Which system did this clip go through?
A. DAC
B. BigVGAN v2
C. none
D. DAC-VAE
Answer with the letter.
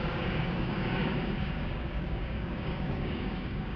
A